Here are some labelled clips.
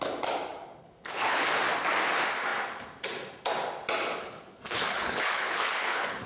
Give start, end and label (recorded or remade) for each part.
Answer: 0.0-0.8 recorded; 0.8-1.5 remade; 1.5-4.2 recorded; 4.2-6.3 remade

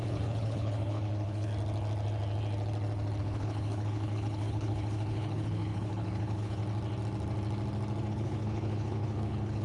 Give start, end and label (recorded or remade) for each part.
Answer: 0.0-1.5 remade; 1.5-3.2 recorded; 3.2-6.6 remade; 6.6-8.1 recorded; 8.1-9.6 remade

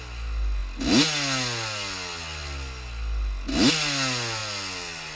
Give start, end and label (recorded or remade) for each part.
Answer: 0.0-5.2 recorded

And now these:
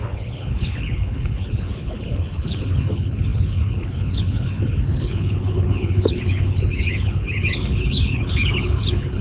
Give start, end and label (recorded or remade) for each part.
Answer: 0.0-9.2 remade

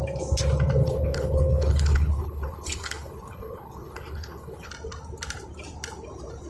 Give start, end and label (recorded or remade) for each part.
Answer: 0.0-0.8 recorded; 0.8-4.7 remade; 4.7-6.5 recorded

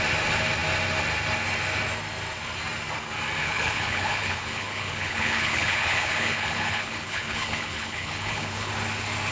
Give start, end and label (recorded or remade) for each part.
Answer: 0.0-3.4 recorded; 3.4-8.7 remade; 8.7-9.3 recorded